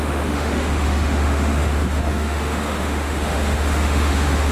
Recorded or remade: remade